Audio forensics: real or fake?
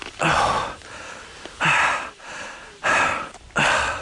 real